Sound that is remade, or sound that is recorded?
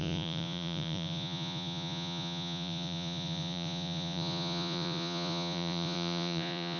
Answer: remade